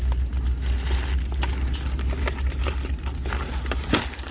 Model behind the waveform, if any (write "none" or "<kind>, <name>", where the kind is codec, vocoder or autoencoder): none